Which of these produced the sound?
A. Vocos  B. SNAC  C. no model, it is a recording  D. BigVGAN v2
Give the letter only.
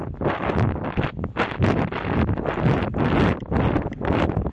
C